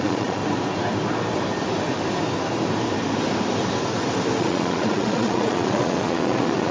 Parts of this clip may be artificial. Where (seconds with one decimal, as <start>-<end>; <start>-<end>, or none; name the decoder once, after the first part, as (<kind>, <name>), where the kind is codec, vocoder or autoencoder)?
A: 0.0-0.4 (vocoder, Vocos); 4.4-6.7